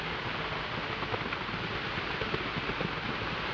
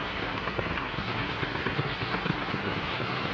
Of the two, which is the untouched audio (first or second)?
first